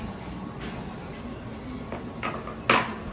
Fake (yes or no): no